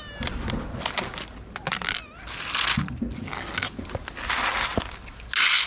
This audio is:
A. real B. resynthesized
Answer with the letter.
A